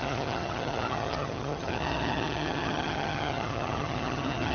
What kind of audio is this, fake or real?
fake